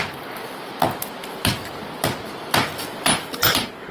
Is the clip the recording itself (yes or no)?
yes